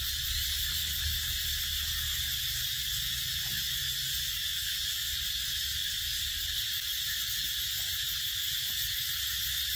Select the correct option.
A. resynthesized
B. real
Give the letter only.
B